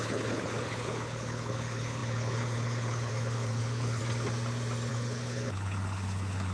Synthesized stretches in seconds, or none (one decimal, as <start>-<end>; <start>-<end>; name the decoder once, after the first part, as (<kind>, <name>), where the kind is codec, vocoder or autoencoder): 0.0-4.0 (codec, HILCodec); 4.9-6.5